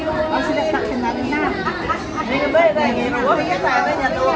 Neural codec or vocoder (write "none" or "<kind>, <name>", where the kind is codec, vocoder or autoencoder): none